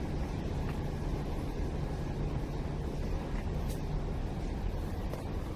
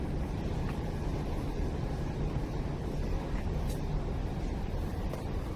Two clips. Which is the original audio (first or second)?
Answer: first